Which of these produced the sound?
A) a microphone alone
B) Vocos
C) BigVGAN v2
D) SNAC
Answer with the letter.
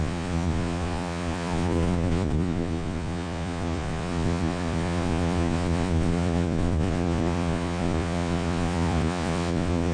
B